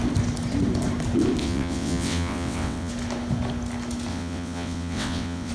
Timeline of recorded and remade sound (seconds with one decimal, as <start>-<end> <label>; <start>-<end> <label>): 0.0-1.4 recorded; 1.4-2.9 remade; 2.9-4.1 recorded; 4.1-5.5 remade